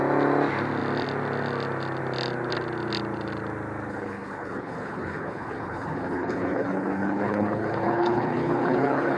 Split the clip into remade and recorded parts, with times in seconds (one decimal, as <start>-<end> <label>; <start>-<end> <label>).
0.0-3.9 recorded; 3.9-9.2 remade